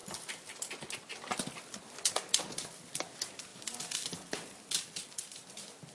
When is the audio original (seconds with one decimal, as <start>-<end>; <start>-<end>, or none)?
0.0-5.9